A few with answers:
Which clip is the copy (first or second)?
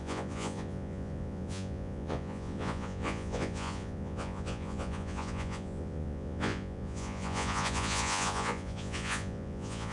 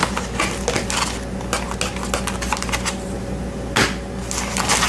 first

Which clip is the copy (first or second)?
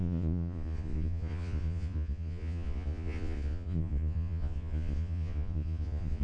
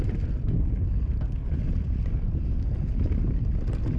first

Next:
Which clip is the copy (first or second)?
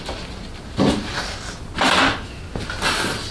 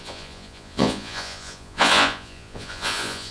second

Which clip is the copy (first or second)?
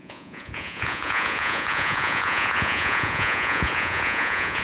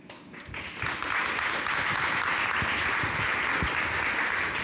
first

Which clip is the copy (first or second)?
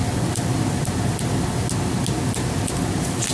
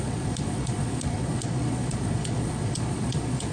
second